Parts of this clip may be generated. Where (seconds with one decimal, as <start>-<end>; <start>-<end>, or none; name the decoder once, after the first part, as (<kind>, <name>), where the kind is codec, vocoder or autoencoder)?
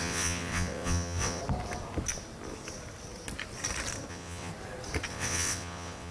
0.0-1.4 (vocoder, WaveNeXt); 4.1-4.5; 5.1-6.1